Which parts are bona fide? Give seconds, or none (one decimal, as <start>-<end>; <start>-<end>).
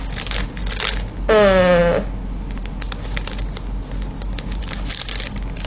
0.0-5.7